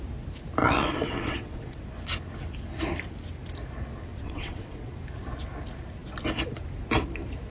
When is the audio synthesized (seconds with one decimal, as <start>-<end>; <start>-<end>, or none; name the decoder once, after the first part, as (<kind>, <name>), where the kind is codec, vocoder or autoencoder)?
0.6-1.8 (vocoder, WaveNeXt); 4.1-4.9

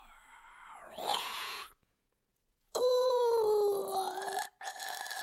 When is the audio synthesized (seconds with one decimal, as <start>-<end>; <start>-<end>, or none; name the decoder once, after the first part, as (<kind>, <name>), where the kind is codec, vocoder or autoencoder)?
1.1-3.2 (vocoder, Vocos)

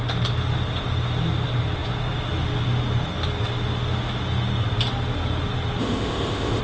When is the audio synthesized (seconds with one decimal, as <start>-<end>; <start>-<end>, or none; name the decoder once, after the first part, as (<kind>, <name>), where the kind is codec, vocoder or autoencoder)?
5.8-6.6 (codec, ZipCodec)

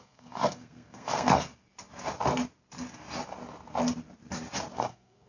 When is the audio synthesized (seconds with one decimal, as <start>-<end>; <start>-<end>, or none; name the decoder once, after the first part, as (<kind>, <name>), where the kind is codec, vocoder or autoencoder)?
0.0-1.5 (codec, SNAC); 4.7-5.3

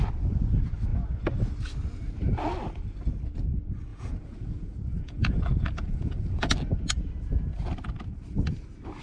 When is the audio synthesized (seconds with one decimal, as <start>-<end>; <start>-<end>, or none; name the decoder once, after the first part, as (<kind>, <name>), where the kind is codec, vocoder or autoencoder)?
3.9-6.5 (vocoder, Vocos)

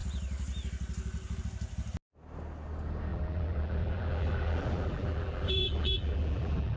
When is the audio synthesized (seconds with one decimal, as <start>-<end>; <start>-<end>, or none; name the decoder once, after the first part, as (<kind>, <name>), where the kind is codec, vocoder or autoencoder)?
3.1-6.8 (vocoder, BigVGAN v2)